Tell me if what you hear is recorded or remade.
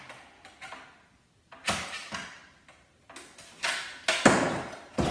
recorded